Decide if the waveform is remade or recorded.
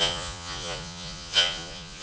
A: remade